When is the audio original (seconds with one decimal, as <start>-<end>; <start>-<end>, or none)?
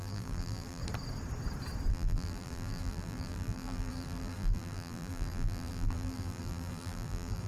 0.8-1.9